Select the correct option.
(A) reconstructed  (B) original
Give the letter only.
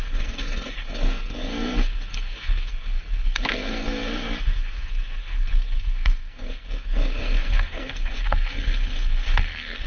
A